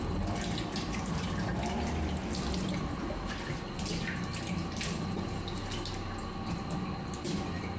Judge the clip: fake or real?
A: real